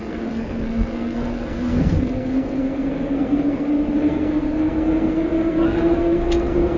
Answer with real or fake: fake